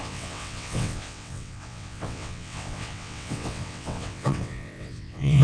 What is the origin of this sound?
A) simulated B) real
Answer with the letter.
A